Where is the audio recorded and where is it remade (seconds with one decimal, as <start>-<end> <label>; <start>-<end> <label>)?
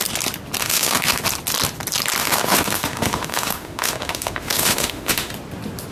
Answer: 0.0-0.6 recorded; 0.6-1.2 remade; 1.2-2.2 recorded; 2.2-5.3 remade; 5.3-5.9 recorded